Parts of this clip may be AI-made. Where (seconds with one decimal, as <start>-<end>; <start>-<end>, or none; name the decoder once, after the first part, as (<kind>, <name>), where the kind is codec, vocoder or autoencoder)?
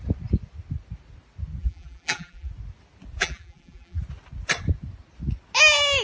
1.6-2.5 (vocoder, BigVGAN v2); 3.2-4.0